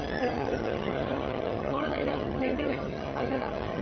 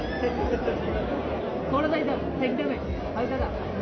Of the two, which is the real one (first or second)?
second